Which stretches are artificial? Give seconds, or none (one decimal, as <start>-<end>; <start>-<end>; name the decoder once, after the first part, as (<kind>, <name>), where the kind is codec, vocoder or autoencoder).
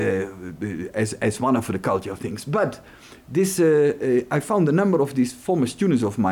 0.0-0.5 (autoencoder, DAC-VAE)